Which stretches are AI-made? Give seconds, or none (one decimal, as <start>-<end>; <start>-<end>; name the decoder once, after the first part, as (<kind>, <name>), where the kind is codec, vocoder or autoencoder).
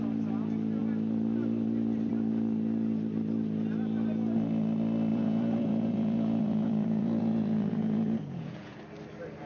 5.1-8.8 (vocoder, Vocos)